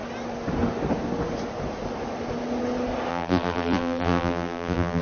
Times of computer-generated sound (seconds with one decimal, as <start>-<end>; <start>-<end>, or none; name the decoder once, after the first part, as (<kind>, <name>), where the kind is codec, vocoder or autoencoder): 3.1-5.0 (vocoder, BigVGAN v2)